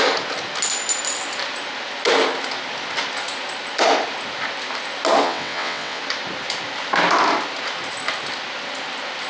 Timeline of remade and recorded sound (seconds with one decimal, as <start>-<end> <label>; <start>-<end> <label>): 0.0-5.2 recorded; 5.2-6.0 remade; 6.0-9.3 recorded